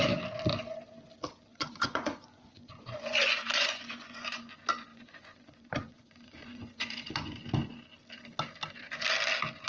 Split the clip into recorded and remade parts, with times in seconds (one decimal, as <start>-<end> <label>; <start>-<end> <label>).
0.0-1.5 recorded; 1.5-4.5 remade; 4.5-4.9 recorded; 4.9-7.4 remade; 7.4-9.7 recorded